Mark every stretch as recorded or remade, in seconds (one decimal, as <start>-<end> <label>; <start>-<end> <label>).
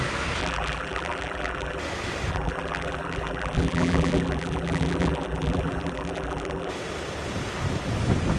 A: 0.0-0.4 recorded; 0.4-1.8 remade; 1.8-2.3 recorded; 2.3-6.7 remade; 6.7-8.4 recorded